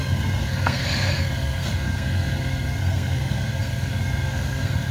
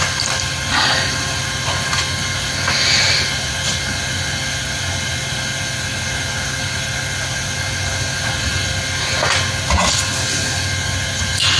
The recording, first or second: second